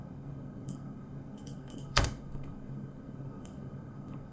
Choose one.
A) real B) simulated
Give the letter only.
B